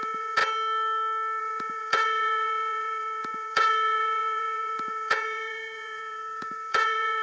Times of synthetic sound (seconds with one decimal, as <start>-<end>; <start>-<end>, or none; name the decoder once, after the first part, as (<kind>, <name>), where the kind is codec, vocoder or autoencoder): 0.0-0.4 (vocoder, Vocos); 1.4-7.2